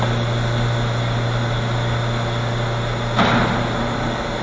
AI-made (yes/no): no